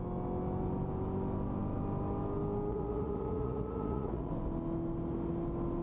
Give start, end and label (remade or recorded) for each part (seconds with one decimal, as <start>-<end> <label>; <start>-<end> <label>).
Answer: 0.0-2.7 recorded; 2.7-4.3 remade; 4.3-5.8 recorded